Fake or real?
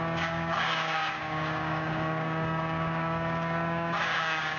fake